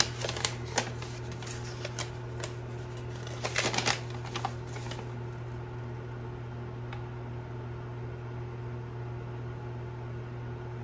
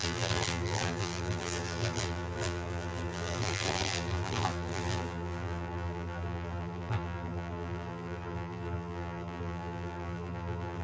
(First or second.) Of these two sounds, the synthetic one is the second